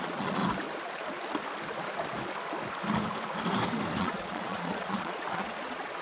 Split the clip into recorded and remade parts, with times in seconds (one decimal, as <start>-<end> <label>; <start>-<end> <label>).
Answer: 0.0-0.4 remade; 0.4-4.0 recorded; 4.0-6.0 remade